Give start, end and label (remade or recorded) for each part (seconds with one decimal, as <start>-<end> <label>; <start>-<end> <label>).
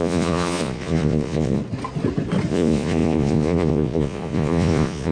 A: 0.0-1.6 remade; 1.6-2.5 recorded; 2.5-5.1 remade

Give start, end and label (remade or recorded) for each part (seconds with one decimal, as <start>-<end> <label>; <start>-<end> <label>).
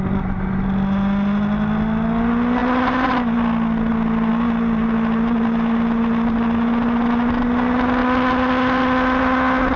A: 0.0-9.8 recorded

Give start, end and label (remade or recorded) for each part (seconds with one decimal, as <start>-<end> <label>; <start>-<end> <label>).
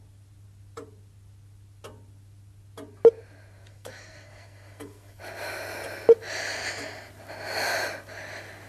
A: 0.0-3.7 recorded; 3.7-5.2 remade; 5.2-8.7 recorded